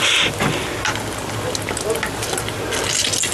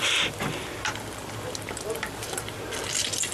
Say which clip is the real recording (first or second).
first